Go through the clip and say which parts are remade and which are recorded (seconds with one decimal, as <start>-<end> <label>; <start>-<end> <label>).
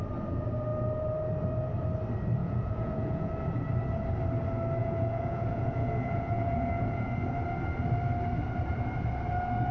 0.0-2.4 recorded; 2.4-3.3 remade; 3.3-4.8 recorded; 4.8-7.1 remade; 7.1-9.7 recorded